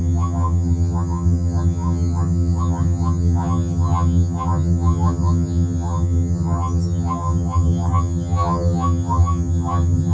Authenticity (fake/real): fake